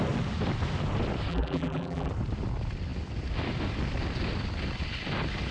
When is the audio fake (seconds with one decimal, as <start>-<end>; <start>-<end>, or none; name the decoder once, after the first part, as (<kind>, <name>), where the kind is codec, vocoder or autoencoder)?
1.3-2.1 (vocoder, BigVGAN v2)